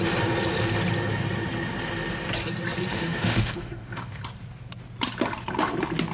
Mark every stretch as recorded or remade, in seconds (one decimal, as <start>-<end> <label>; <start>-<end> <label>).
0.0-2.9 recorded; 2.9-4.2 remade; 4.2-6.1 recorded